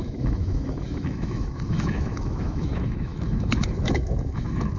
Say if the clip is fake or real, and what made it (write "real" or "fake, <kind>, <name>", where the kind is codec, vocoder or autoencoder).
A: fake, autoencoder, DAC-VAE